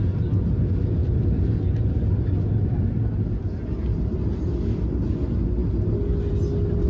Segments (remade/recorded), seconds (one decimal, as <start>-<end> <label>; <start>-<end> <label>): 0.0-1.0 recorded; 1.0-4.5 remade; 4.5-6.9 recorded

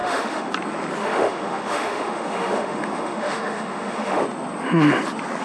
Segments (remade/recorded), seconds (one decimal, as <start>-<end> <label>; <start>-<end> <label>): 0.0-0.5 remade; 0.5-1.0 recorded; 1.0-4.2 remade; 4.2-5.4 recorded

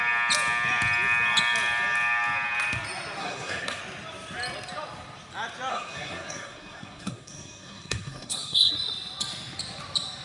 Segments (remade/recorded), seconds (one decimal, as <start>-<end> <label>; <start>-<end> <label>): 0.0-3.2 recorded; 3.2-3.8 remade; 3.8-5.7 recorded; 5.7-8.7 remade; 8.7-10.2 recorded

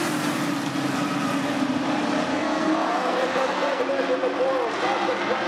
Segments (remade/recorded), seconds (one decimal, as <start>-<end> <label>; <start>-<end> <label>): 0.0-2.3 recorded; 2.3-3.8 remade; 3.8-5.5 recorded

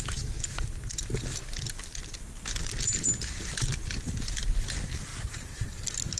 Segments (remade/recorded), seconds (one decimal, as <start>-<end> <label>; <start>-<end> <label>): 0.0-6.2 recorded

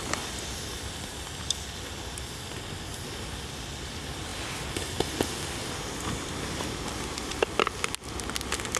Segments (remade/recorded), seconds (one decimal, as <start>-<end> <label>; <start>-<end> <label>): 0.0-8.8 recorded

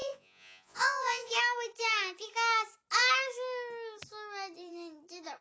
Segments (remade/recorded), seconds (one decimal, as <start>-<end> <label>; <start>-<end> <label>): 0.0-1.3 remade; 1.3-5.4 recorded

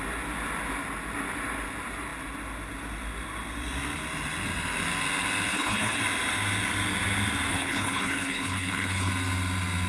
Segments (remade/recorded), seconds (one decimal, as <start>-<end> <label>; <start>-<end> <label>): 0.0-5.5 recorded; 5.5-6.0 remade; 6.0-7.5 recorded; 7.5-9.1 remade; 9.1-9.9 recorded